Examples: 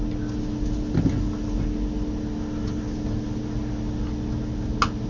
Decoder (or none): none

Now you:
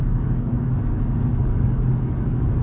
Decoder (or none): codec, DAC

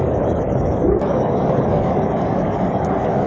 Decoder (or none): codec, DAC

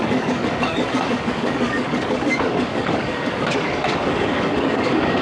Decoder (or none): codec, DAC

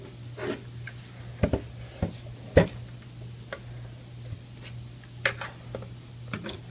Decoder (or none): none